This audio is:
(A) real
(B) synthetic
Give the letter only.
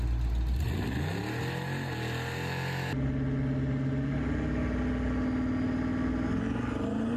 A